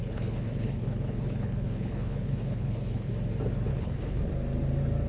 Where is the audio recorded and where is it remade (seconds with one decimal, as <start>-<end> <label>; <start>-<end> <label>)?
0.0-3.1 remade; 3.1-3.7 recorded; 3.7-4.3 remade; 4.3-5.1 recorded